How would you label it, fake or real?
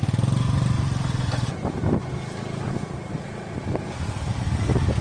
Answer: real